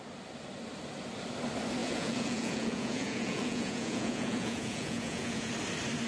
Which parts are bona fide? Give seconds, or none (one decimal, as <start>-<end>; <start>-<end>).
0.0-1.8; 5.5-6.1